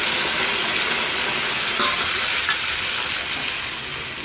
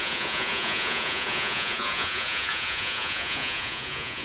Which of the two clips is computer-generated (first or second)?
second